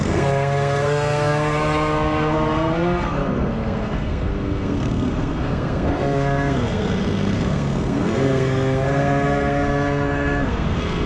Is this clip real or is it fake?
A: fake